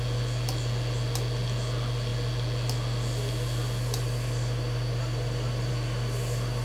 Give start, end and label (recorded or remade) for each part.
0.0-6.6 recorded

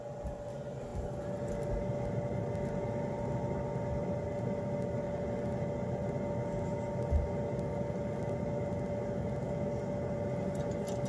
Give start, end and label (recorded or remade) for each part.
0.0-11.1 recorded